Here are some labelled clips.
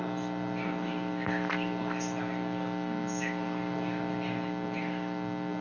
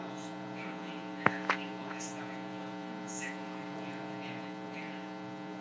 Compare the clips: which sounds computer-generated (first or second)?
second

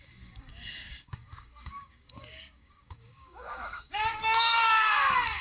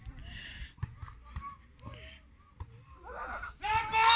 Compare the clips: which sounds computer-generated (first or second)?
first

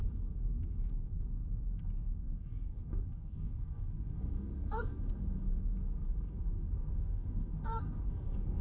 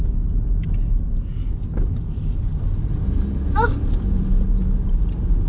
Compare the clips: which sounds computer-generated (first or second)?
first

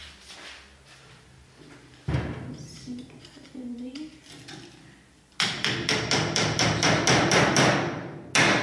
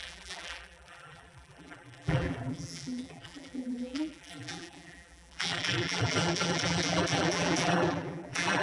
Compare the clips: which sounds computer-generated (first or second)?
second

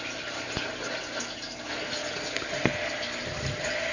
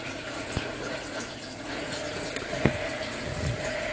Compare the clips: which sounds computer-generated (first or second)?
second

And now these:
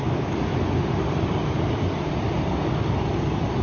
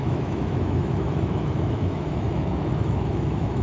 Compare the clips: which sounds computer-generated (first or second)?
second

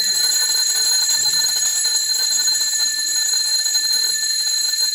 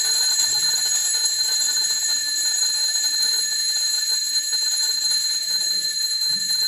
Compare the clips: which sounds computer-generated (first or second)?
second